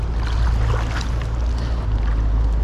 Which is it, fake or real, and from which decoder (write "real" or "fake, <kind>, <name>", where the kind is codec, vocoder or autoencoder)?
real